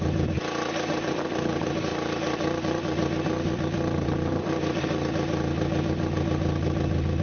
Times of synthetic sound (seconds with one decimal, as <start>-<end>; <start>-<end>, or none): 1.9-5.0